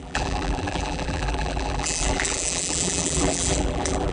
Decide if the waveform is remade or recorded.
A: remade